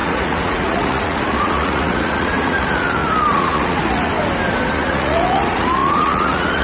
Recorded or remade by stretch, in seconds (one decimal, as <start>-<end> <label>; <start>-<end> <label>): 0.0-4.1 remade; 4.1-4.7 recorded; 4.7-6.6 remade